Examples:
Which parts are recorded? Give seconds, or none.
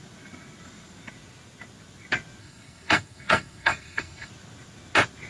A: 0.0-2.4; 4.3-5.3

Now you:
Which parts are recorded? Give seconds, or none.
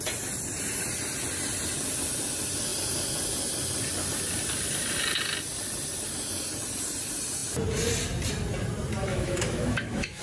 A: 0.0-9.1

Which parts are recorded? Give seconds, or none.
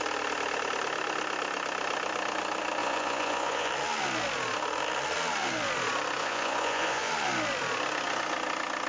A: 0.0-2.8; 3.7-6.2; 7.1-8.9